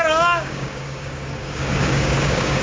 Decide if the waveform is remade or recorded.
remade